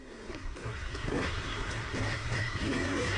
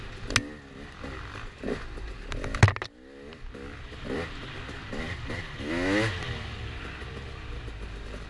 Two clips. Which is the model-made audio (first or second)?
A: first